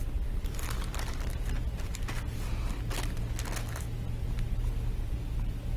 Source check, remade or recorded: recorded